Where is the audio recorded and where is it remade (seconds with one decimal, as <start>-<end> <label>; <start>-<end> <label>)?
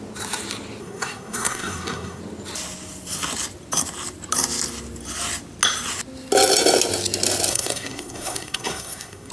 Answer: 0.0-0.8 recorded; 0.8-2.2 remade; 2.2-7.5 recorded; 7.5-9.3 remade